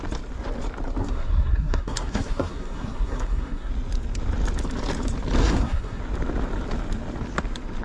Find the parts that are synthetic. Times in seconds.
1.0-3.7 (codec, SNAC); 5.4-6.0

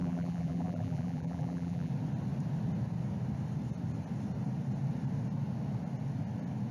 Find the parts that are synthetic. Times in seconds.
0.0-1.9 (vocoder, BigVGAN v2)

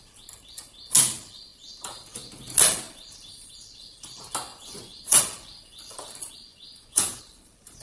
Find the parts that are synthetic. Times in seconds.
4.5-5.2 (vocoder, Vocos); 6.5-7.2

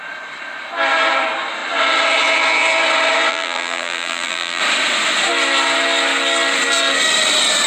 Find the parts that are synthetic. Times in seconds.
3.3-4.6 (vocoder, BigVGAN v2)

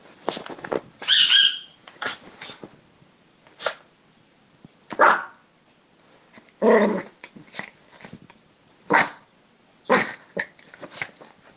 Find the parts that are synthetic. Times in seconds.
0.0-9.7 (vocoder, BigVGAN v2); 10.6-11.6

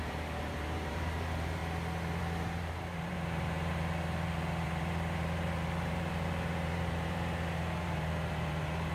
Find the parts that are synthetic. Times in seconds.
0.0-1.6 (vocoder, BigVGAN v2); 2.2-8.9